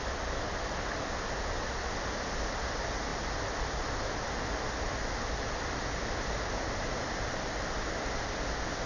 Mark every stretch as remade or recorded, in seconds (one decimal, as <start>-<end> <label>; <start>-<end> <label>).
0.0-8.9 recorded